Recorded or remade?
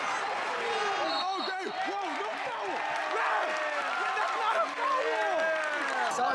recorded